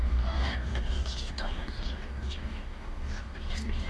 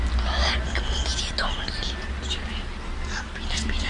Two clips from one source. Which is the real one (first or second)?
second